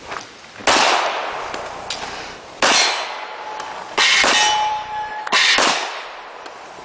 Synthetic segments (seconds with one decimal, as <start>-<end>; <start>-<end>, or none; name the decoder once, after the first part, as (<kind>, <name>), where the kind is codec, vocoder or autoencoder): none